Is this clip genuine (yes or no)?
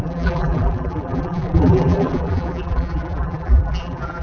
no